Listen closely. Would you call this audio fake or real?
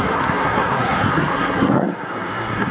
fake